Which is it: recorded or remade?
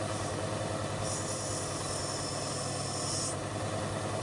recorded